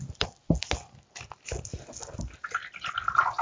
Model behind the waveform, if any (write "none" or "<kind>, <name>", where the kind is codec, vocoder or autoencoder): none